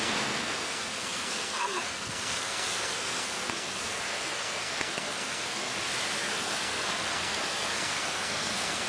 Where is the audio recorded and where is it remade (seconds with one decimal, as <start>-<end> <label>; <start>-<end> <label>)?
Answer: 0.0-5.7 remade; 5.7-6.2 recorded; 6.2-8.9 remade